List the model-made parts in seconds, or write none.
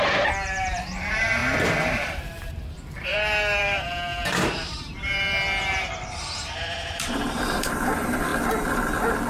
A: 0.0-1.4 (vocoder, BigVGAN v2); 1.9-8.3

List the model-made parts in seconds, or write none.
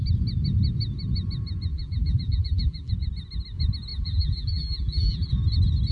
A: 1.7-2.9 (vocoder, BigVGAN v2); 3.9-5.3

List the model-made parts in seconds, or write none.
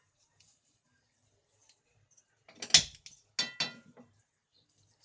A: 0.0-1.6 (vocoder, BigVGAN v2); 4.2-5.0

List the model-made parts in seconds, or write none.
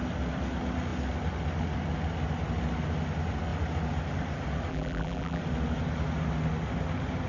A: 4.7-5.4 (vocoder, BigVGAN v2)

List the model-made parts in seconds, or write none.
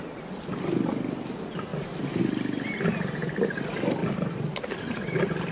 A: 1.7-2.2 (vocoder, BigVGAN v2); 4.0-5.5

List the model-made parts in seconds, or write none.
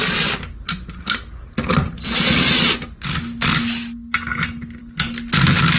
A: none